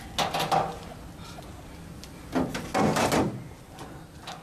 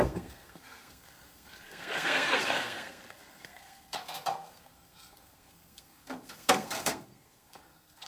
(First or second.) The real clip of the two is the first